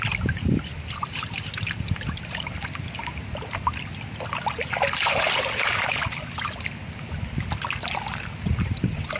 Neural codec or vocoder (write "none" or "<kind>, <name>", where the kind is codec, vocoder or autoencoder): none